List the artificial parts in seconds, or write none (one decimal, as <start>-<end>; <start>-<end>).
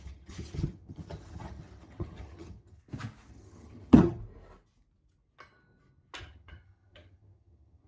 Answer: 0.0-2.8; 3.3-4.2; 6.2-7.9